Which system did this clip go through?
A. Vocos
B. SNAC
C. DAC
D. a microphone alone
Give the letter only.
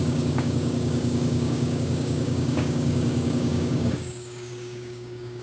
C